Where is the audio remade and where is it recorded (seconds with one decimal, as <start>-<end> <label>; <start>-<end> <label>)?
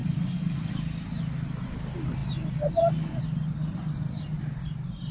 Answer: 0.0-0.7 remade; 0.7-5.1 recorded